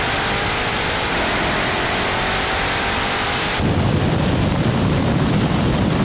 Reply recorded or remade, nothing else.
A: remade